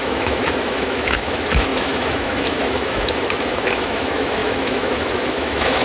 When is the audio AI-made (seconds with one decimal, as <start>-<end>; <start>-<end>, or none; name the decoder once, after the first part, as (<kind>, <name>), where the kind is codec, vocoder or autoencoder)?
0.0-5.8 (autoencoder, DAC-VAE)